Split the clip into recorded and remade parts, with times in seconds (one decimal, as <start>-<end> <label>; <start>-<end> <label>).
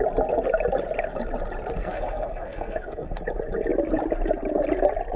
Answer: 0.0-1.8 recorded; 1.8-3.2 remade; 3.2-5.2 recorded